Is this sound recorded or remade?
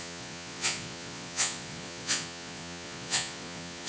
remade